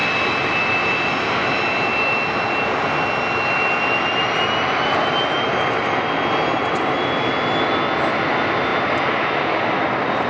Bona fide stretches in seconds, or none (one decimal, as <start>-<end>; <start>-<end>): 0.0-10.3